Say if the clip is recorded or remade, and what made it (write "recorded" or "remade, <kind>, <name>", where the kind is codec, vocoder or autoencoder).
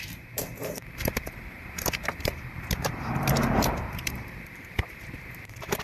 remade, vocoder, BigVGAN v2